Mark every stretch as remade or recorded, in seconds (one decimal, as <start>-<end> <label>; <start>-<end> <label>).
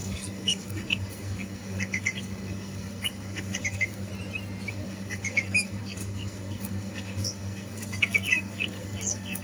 0.0-4.1 remade; 4.1-4.7 recorded; 4.7-9.4 remade